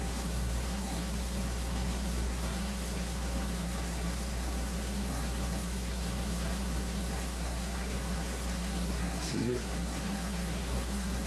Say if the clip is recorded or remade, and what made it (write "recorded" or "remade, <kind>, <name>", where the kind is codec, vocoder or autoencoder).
remade, codec, SNAC